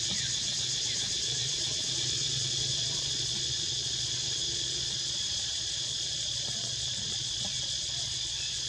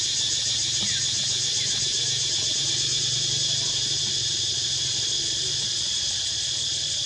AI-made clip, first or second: first